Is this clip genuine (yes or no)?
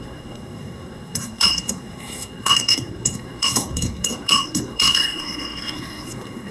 no